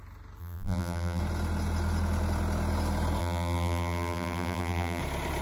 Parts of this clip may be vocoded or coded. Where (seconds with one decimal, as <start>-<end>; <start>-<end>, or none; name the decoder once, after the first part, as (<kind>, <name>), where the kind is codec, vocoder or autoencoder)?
0.4-1.2 (vocoder, BigVGAN v2); 3.2-5.0